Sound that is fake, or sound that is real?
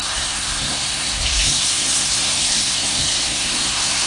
fake